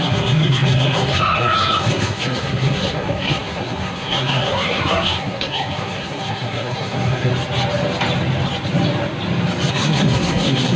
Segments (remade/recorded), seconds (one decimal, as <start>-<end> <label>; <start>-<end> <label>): 0.0-7.3 remade; 7.3-9.7 recorded; 9.7-10.8 remade